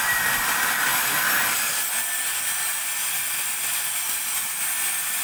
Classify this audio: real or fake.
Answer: real